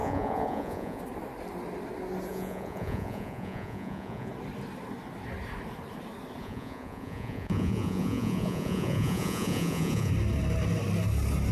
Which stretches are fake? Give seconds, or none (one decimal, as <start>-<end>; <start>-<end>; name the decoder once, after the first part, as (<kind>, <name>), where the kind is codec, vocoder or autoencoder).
0.0-1.0 (vocoder, Vocos); 2.3-4.3; 6.4-10.1